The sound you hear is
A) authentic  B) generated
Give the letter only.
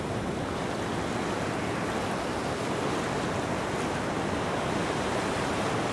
A